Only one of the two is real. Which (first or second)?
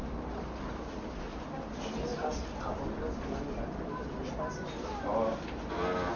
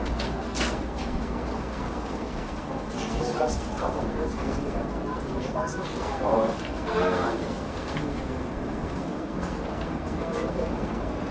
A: first